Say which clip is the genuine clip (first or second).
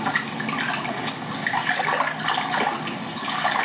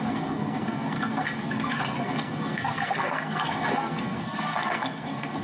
first